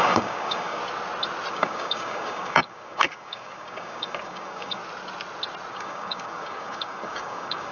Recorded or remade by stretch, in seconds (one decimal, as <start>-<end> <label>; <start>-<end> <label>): 0.0-0.8 remade; 0.8-1.5 recorded; 1.5-4.8 remade; 4.8-5.7 recorded; 5.7-7.7 remade